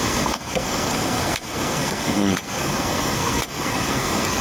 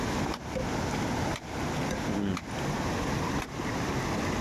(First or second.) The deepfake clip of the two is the first